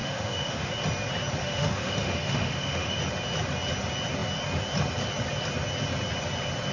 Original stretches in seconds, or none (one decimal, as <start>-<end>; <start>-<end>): 0.7-1.4; 3.0-6.7